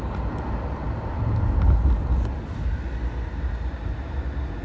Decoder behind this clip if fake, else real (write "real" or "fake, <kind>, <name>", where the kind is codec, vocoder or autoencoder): real